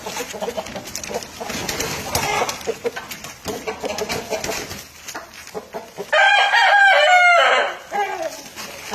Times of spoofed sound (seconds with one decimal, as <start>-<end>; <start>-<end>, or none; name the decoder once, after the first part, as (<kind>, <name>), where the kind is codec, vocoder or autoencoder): none